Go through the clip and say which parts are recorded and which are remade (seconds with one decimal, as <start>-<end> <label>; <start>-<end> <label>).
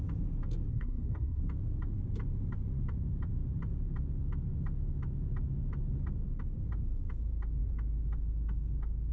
0.0-0.7 recorded; 0.7-1.4 remade; 1.4-9.1 recorded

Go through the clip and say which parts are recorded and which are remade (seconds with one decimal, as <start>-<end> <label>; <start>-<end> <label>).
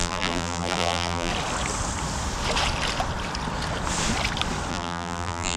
0.0-1.3 remade; 1.3-4.7 recorded; 4.7-5.6 remade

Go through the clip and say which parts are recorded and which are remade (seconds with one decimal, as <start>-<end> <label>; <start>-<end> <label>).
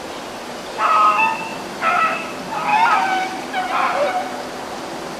0.0-2.7 recorded; 2.7-5.2 remade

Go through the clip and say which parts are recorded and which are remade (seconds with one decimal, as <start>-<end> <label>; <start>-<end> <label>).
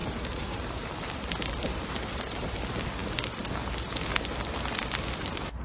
0.0-1.1 remade; 1.1-1.7 recorded; 1.7-2.5 remade; 2.5-5.6 recorded